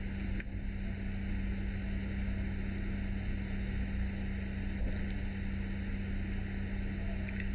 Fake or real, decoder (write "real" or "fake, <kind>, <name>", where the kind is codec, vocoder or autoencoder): real